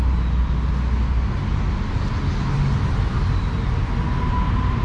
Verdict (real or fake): real